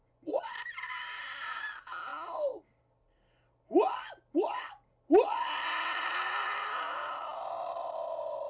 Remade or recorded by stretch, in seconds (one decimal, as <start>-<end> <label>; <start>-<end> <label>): 0.0-0.9 remade; 0.9-8.5 recorded